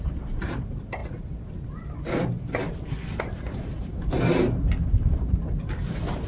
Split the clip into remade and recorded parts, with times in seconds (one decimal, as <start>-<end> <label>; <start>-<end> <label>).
0.0-1.0 remade; 1.0-3.2 recorded; 3.2-6.3 remade